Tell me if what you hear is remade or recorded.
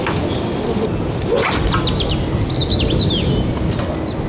recorded